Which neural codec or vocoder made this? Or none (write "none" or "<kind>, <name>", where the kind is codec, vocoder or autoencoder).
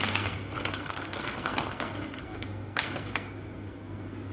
codec, SNAC